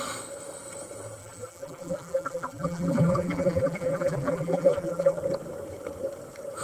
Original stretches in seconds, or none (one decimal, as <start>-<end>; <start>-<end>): 0.0-1.2; 5.2-6.6